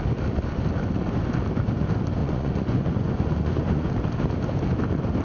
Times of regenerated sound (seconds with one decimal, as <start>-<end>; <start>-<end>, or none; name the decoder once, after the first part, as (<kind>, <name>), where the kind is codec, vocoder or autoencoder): 2.2-3.9 (vocoder, Vocos)